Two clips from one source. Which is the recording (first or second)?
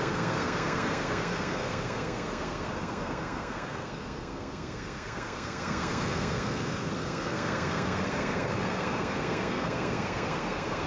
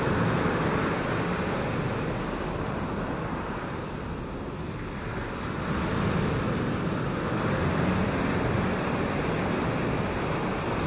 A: second